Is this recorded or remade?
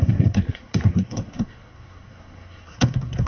remade